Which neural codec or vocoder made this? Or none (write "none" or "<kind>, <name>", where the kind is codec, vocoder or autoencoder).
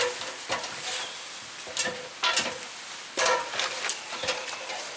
none